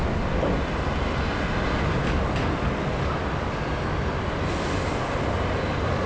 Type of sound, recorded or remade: recorded